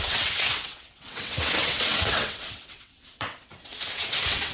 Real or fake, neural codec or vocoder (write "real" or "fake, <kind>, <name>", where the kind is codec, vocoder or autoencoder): fake, vocoder, WaveNeXt